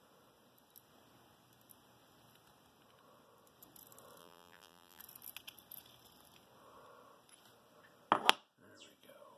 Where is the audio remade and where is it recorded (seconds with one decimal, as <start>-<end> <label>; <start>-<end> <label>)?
0.0-4.2 recorded; 4.2-5.0 remade; 5.0-9.4 recorded